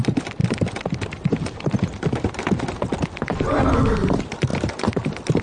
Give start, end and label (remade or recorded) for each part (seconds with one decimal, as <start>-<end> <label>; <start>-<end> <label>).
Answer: 0.0-5.4 recorded